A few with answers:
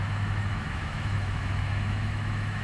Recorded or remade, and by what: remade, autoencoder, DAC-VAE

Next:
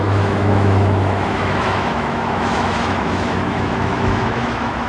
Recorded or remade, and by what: remade, autoencoder, DAC-VAE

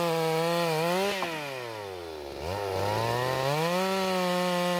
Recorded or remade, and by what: recorded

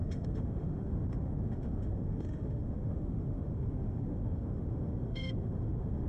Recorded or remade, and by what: remade, autoencoder, DAC-VAE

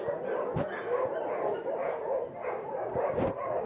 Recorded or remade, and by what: recorded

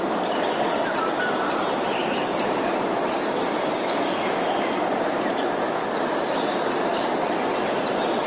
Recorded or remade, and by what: recorded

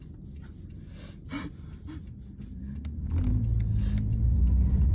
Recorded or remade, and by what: recorded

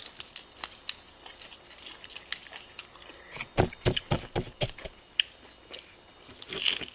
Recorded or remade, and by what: recorded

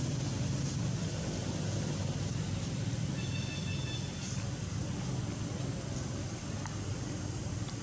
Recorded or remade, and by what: recorded